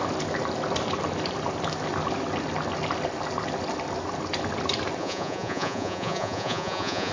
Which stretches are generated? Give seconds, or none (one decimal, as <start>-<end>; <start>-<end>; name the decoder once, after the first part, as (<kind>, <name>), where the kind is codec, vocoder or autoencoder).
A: 5.0-7.1 (vocoder, Vocos)